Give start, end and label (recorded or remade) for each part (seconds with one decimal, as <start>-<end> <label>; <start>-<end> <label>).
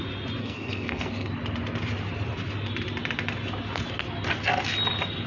0.0-0.4 recorded; 0.4-1.3 remade; 1.3-5.3 recorded